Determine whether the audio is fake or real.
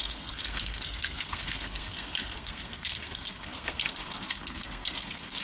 fake